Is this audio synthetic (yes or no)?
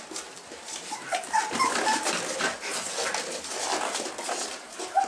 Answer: no